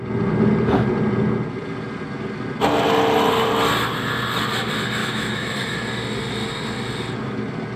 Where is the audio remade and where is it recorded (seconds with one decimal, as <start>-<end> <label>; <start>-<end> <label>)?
0.0-5.0 recorded; 5.0-5.8 remade; 5.8-7.8 recorded